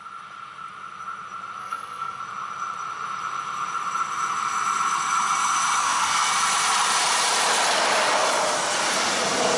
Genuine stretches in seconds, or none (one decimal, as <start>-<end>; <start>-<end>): 0.0-1.6; 2.2-5.8; 6.3-9.6